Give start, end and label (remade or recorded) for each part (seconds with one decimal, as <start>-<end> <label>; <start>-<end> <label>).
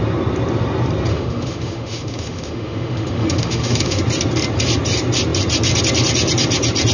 0.0-1.1 recorded; 1.1-4.0 remade; 4.0-6.9 recorded